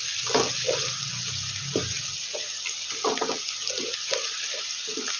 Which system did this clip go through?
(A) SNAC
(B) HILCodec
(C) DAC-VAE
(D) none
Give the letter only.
D